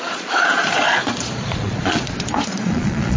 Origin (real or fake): fake